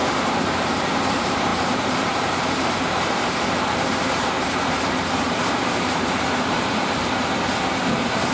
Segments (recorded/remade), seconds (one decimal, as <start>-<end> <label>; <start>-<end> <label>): 0.0-7.0 remade; 7.0-8.3 recorded